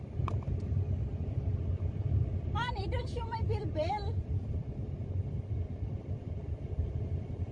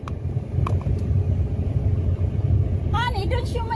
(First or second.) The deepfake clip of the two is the first